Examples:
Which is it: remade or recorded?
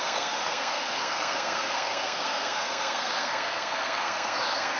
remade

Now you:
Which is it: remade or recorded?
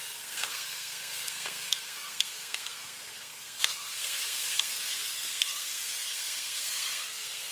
remade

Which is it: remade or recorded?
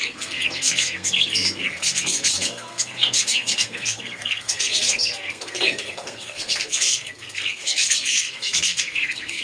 remade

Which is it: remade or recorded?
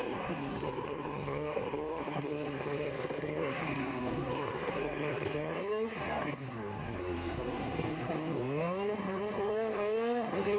remade